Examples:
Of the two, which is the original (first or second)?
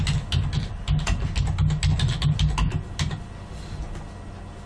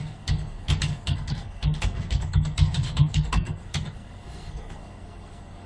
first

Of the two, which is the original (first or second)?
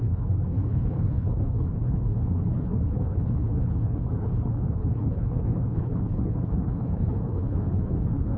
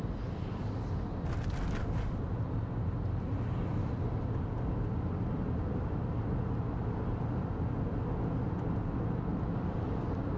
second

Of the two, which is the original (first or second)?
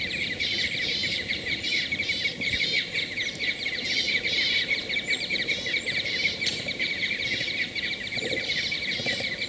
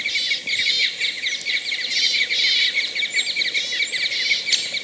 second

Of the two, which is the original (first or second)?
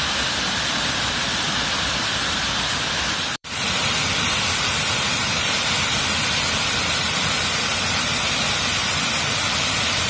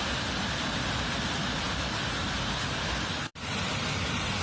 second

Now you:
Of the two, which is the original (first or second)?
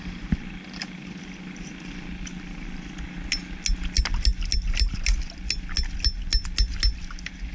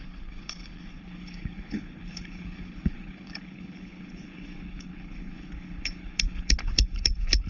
first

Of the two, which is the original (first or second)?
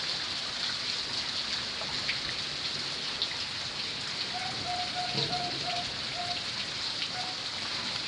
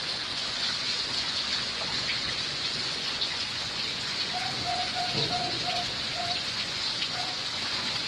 first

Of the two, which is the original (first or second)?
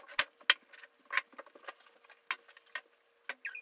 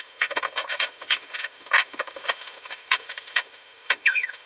first